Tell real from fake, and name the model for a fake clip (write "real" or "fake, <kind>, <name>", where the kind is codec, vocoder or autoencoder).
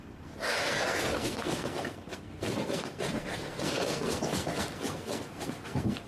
fake, codec, SNAC